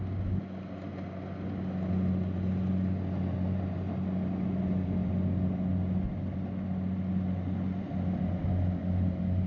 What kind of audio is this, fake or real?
real